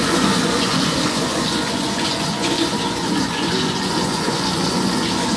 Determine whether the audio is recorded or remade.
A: remade